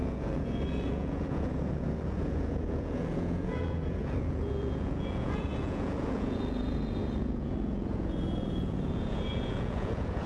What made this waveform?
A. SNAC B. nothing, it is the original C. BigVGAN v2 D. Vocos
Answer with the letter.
D